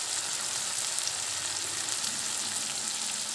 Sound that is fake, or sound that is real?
real